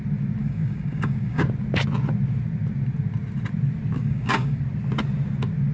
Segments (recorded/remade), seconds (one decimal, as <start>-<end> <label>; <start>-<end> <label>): 0.0-0.4 recorded; 0.4-1.4 remade; 1.4-4.0 recorded; 4.0-4.6 remade; 4.6-5.7 recorded